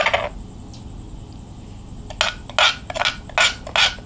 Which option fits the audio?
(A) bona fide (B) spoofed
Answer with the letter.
A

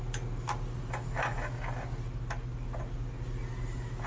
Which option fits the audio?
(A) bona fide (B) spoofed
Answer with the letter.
A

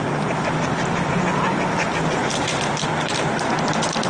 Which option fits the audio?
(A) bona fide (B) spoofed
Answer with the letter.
A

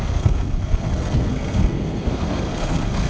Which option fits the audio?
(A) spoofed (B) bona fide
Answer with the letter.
A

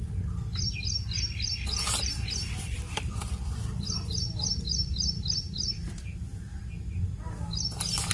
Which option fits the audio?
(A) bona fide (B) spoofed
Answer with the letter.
A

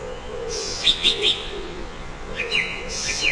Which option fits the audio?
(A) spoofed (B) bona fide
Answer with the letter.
A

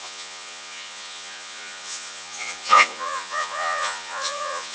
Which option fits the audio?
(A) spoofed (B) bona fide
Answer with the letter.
A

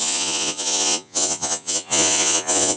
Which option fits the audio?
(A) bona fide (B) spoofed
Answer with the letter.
B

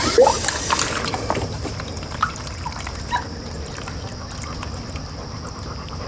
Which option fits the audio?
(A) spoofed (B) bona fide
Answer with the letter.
A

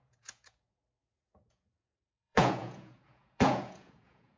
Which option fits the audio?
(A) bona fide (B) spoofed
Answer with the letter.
B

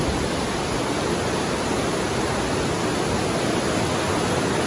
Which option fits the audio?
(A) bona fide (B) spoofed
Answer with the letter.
A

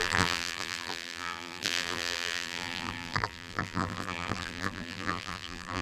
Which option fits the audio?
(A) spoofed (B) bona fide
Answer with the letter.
A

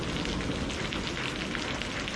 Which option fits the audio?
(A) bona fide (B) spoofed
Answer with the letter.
A